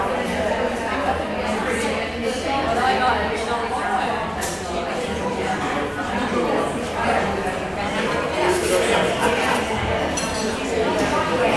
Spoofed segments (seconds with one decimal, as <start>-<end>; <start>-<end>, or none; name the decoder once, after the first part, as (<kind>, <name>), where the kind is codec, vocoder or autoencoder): none

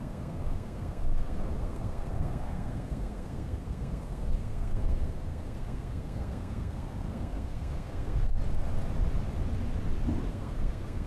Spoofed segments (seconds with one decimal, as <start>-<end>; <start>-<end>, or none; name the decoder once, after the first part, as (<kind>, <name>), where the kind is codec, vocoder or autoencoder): 0.0-8.4 (codec, SNAC); 10.3-11.1

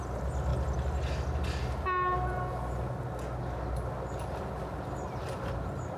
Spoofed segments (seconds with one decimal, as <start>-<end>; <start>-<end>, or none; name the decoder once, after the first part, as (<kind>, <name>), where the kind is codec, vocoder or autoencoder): none

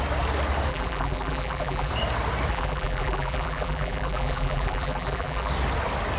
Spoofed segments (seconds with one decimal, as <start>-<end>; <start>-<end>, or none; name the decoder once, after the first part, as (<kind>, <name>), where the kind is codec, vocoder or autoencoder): 0.7-1.9 (vocoder, BigVGAN v2); 2.5-5.5

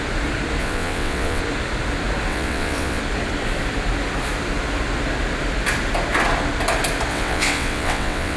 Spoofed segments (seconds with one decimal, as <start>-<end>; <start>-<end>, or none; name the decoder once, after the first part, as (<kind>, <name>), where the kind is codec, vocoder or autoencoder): 0.6-1.4 (vocoder, WaveNeXt); 2.3-3.0; 7.1-8.4